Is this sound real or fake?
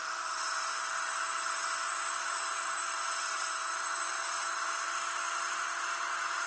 real